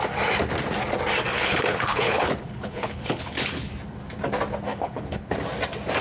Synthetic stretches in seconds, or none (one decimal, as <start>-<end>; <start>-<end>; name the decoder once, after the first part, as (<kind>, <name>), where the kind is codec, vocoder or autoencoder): 1.3-3.7 (codec, HILCodec); 4.7-5.3